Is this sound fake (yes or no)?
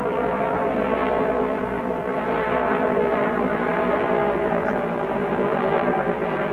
yes